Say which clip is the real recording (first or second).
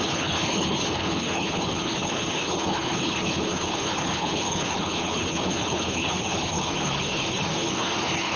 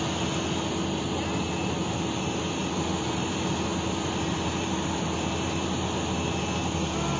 second